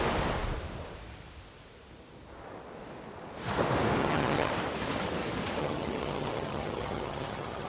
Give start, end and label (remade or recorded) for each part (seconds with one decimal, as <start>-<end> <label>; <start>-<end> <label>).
0.0-4.0 recorded; 4.0-4.5 remade; 4.5-5.6 recorded; 5.6-7.7 remade